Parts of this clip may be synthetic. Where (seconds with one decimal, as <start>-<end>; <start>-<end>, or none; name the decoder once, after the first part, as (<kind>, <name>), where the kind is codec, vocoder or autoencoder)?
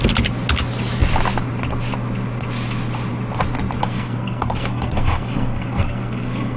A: 3.8-6.6 (codec, SNAC)